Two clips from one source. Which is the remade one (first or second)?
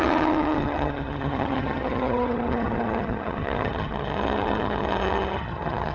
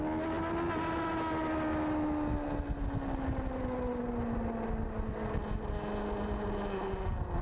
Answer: first